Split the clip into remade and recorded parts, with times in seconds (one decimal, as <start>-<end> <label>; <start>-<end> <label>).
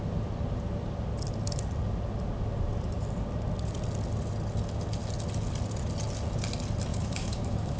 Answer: 0.0-6.9 recorded; 6.9-7.8 remade